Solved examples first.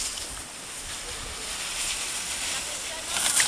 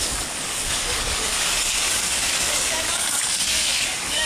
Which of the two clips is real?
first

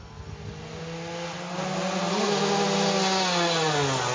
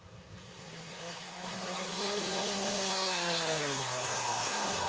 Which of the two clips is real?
first